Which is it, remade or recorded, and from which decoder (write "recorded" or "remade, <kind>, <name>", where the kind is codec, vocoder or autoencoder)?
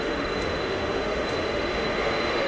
remade, autoencoder, DAC-VAE